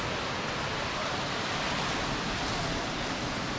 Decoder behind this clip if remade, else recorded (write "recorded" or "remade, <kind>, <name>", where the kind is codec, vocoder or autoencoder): recorded